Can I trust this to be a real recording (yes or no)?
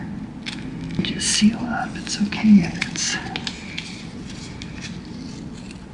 yes